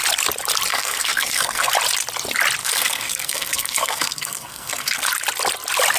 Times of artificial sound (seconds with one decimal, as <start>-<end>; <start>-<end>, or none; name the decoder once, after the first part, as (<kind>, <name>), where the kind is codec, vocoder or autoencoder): 0.7-1.7 (codec, SNAC); 2.6-5.1